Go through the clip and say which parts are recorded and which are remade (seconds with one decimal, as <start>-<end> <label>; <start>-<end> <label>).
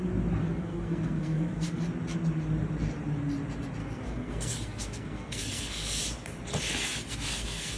0.0-0.4 recorded; 0.4-1.8 remade; 1.8-3.8 recorded; 3.8-6.0 remade; 6.0-6.7 recorded; 6.7-7.8 remade